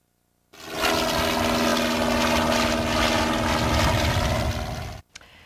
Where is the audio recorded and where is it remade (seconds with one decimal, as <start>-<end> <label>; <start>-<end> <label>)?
0.0-5.5 recorded